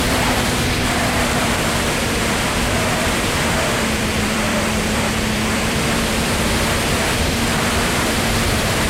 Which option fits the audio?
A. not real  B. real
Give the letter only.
A